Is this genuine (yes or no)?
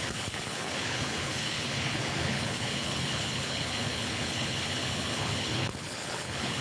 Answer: no